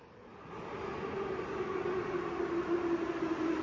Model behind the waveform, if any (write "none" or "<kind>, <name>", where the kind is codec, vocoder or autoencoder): none